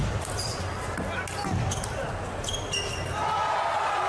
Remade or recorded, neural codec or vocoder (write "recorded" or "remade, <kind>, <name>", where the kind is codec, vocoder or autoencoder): recorded